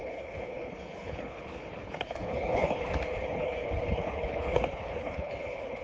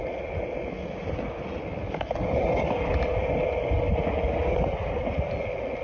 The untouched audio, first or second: second